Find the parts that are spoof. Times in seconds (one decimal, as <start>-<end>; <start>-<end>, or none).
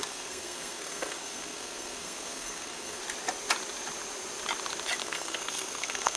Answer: 0.0-3.0; 5.0-6.2